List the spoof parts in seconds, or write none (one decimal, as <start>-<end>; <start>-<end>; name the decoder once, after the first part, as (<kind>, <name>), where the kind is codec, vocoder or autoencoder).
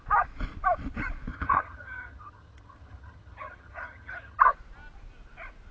1.3-4.4 (vocoder, HiFi-GAN)